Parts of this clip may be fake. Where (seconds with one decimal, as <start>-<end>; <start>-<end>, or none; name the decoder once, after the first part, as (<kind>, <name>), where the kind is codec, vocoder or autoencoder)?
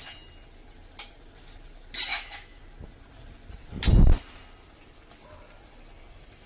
2.1-2.6 (autoencoder, DAC-VAE)